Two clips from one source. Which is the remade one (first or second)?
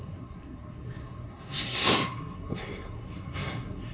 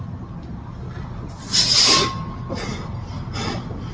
first